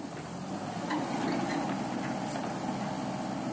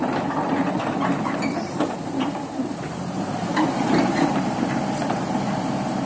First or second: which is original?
first